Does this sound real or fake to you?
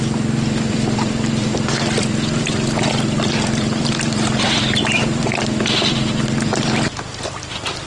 fake